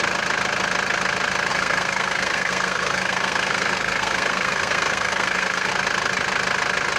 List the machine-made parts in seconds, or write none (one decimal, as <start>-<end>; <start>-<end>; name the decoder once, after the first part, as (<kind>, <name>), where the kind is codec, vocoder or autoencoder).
1.5-5.7 (codec, SNAC)

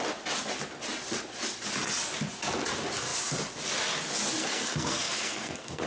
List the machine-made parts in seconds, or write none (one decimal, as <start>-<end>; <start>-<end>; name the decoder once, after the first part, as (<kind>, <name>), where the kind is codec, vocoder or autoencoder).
4.4-5.9 (codec, SNAC)

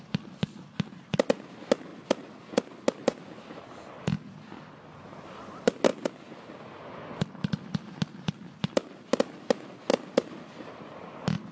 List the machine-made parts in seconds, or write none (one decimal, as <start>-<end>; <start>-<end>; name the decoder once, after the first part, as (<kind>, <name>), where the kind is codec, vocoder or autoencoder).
none

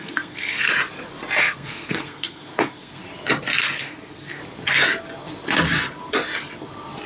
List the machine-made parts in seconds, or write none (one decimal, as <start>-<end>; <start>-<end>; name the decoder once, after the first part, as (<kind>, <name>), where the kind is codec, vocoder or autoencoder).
0.0-0.7 (codec, SNAC); 1.4-3.0; 3.8-4.4